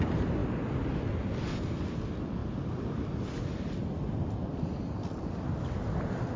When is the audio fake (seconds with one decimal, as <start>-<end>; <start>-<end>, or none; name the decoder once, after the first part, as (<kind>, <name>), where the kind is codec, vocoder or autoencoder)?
none